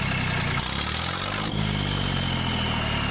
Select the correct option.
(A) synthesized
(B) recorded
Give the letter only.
B